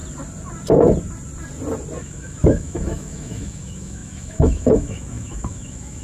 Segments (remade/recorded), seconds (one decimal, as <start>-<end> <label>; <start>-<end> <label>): 0.0-2.0 recorded; 2.0-6.0 remade